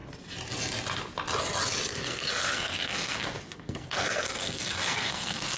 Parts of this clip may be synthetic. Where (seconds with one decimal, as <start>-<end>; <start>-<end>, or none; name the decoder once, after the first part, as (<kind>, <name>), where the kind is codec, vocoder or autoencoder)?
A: 1.9-5.6 (codec, SNAC)